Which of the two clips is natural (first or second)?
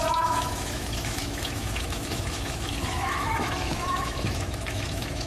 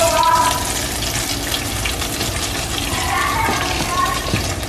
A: second